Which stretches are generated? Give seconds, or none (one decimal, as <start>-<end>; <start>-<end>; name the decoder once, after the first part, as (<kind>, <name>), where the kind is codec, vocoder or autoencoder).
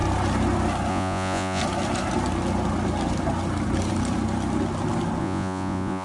0.9-1.6 (vocoder, Vocos); 5.2-6.0